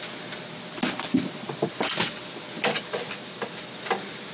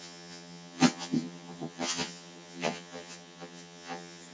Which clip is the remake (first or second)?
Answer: second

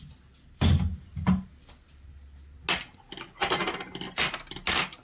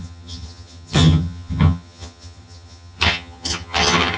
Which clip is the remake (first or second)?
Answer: second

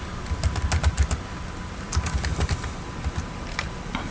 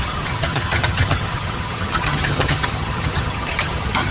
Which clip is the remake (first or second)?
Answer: second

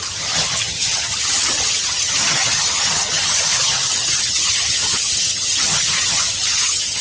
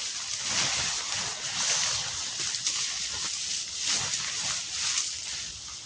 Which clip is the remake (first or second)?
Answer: first